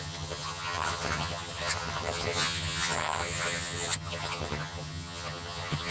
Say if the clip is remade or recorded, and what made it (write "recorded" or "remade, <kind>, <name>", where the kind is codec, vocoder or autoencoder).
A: remade, vocoder, HiFi-GAN